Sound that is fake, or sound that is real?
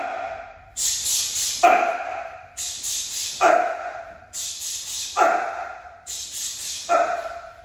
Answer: fake